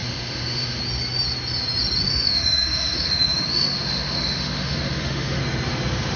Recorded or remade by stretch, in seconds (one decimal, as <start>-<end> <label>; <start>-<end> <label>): 0.0-0.8 remade; 0.8-2.1 recorded; 2.1-5.4 remade; 5.4-6.2 recorded